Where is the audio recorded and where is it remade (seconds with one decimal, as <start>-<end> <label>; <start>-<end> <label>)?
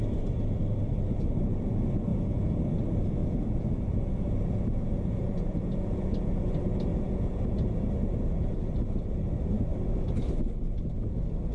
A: 0.0-2.1 recorded; 2.1-2.7 remade; 2.7-3.2 recorded; 3.2-6.3 remade; 6.3-6.9 recorded; 6.9-7.4 remade; 7.4-11.5 recorded